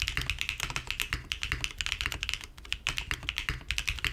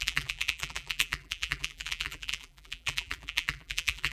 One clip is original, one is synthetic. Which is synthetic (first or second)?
second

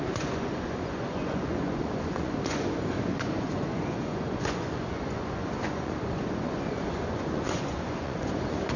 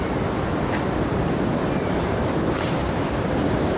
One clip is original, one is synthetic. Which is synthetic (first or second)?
first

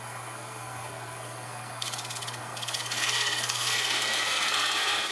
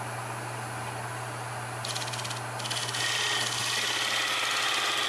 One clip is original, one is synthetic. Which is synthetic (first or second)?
first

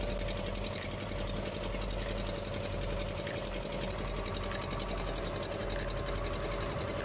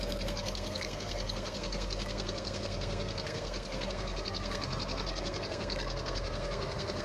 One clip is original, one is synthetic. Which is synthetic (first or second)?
second